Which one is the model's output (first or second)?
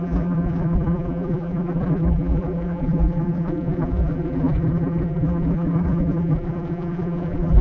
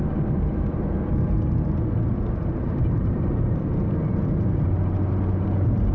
first